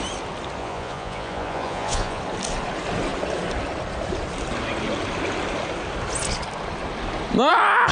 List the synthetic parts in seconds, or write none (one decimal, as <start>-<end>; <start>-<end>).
0.6-2.2